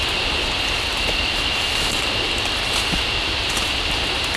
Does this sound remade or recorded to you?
recorded